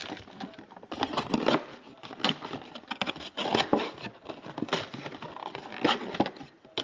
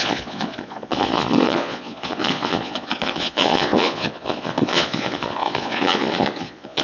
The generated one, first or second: second